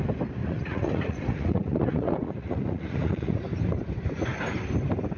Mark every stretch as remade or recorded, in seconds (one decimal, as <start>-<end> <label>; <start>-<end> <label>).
0.0-0.4 recorded; 0.4-3.4 remade; 3.4-5.2 recorded